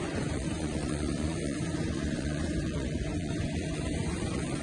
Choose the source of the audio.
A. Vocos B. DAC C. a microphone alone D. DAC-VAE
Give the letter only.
A